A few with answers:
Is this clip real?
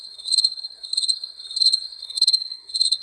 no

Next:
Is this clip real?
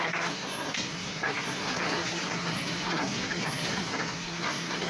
no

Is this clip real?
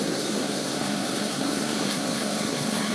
no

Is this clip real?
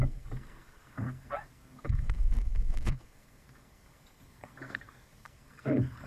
no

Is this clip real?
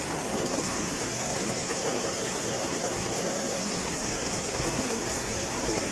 no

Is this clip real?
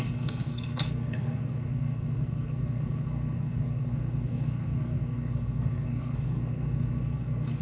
no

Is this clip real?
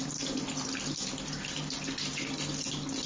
yes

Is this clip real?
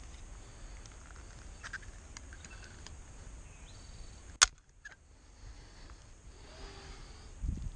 yes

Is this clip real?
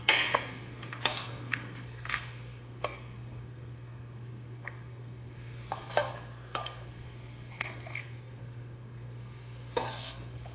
no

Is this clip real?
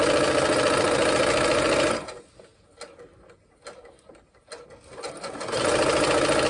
yes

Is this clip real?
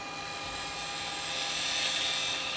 yes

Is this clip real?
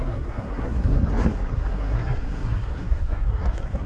no